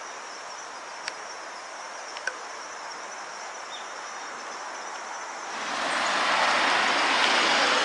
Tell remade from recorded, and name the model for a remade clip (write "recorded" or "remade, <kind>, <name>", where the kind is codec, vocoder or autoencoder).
recorded